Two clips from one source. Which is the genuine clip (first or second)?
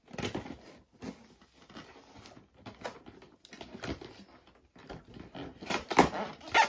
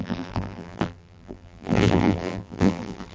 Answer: first